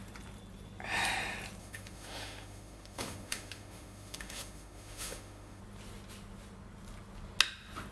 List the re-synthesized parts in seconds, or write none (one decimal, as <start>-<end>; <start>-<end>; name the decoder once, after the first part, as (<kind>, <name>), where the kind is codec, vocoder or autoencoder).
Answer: 1.6-5.6 (autoencoder, DAC-VAE)